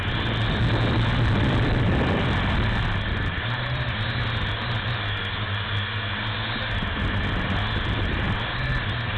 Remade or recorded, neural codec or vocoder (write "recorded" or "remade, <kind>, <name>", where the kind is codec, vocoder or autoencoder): recorded